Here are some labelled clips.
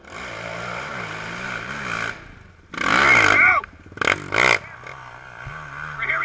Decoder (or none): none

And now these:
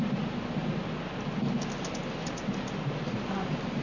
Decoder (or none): none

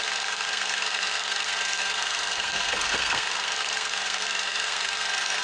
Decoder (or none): codec, SNAC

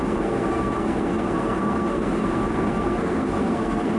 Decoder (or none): codec, SNAC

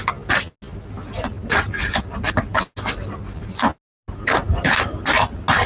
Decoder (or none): none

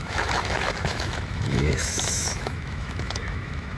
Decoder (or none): autoencoder, DAC-VAE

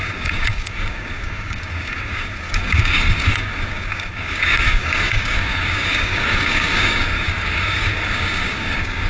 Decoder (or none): codec, DAC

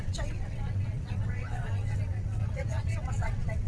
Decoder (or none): vocoder, WaveNeXt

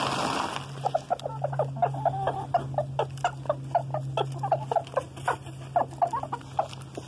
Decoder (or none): none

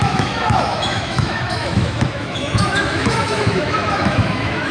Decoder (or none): autoencoder, DAC-VAE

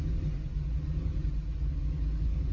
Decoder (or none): none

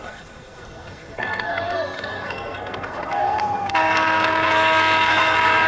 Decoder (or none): codec, SNAC